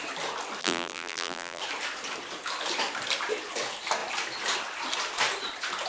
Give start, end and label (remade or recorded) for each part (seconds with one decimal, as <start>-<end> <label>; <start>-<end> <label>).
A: 0.0-0.6 recorded; 0.6-1.6 remade; 1.6-5.9 recorded